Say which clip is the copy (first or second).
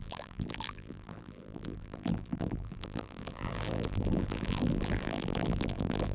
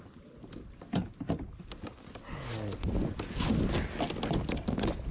first